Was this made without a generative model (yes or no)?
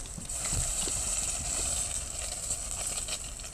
yes